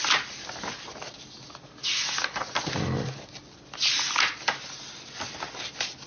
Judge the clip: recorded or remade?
recorded